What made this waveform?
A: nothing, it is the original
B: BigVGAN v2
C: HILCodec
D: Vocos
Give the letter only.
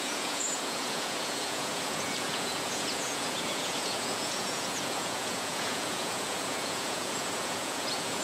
D